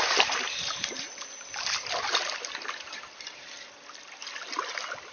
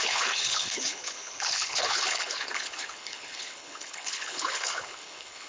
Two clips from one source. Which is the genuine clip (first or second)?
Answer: first